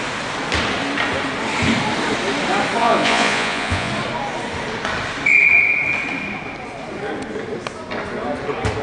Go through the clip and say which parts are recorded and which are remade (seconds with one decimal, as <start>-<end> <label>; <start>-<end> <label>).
0.0-2.8 recorded; 2.8-3.9 remade; 3.9-8.8 recorded